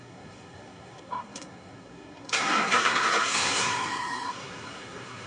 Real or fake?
fake